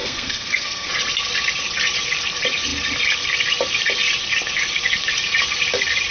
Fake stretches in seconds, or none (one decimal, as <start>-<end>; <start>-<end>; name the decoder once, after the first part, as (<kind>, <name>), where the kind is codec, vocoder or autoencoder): 0.0-0.9 (codec, SNAC)